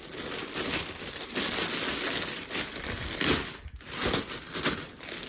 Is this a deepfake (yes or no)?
no